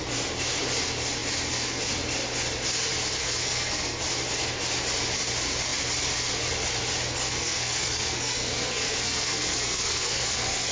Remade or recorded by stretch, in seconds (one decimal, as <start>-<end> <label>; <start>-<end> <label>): 0.0-3.2 recorded; 3.2-4.0 remade; 4.0-7.3 recorded; 7.3-10.7 remade